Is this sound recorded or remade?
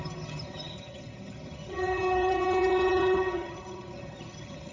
remade